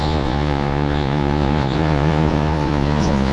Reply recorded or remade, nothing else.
remade